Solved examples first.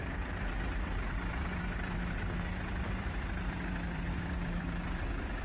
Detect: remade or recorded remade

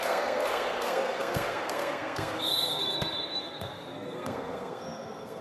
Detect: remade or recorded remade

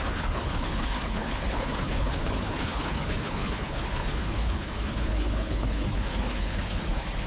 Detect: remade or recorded remade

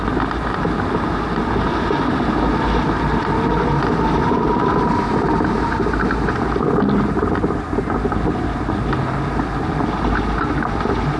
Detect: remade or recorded recorded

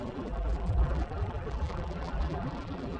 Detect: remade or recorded remade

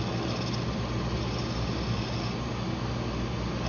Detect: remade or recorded recorded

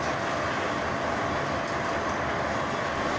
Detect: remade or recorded recorded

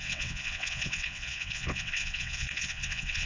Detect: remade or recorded remade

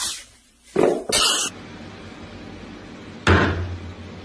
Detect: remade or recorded recorded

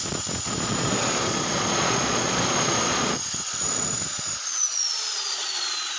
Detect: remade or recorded remade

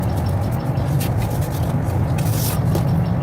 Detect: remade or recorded recorded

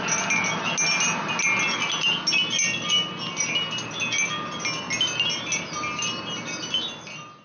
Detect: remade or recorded recorded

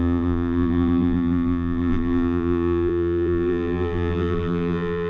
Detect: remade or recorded remade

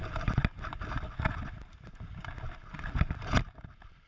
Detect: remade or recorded recorded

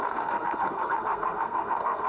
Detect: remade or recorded remade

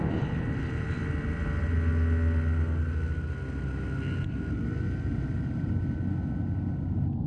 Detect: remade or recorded recorded